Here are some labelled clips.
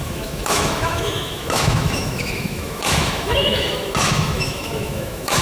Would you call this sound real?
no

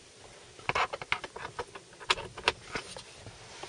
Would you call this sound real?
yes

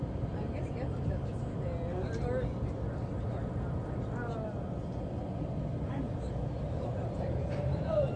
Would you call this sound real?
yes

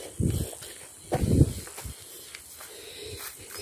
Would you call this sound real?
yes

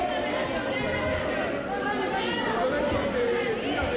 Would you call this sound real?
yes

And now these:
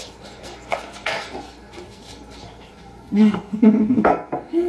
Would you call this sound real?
no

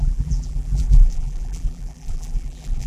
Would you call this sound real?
no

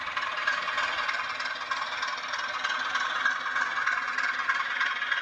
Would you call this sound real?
yes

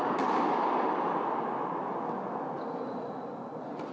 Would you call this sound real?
yes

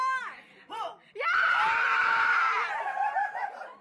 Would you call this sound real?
no